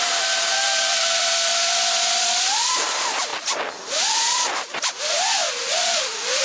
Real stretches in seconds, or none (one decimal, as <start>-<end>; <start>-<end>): 1.5-2.4; 3.3-6.4